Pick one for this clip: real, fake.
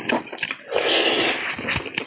real